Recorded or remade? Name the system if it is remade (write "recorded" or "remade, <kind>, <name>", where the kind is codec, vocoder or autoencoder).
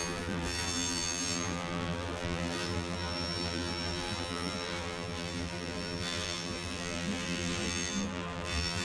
remade, vocoder, BigVGAN v2